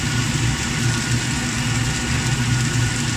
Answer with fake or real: real